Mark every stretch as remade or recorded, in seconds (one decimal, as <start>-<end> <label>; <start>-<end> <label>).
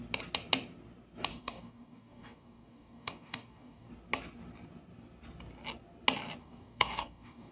0.0-1.3 recorded; 1.3-3.9 remade; 3.9-6.4 recorded; 6.4-7.5 remade